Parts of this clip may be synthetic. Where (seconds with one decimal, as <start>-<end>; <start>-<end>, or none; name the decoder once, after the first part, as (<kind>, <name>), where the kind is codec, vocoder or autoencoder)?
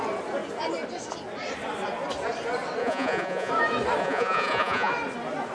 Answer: 2.8-3.5 (vocoder, Vocos); 4.0-4.9